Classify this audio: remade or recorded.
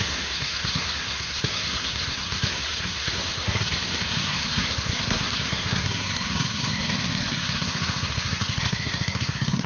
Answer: remade